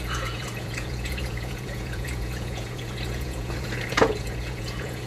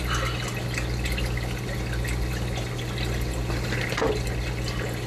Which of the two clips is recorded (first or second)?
second